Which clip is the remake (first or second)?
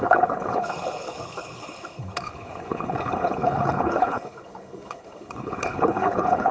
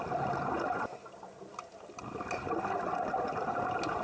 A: first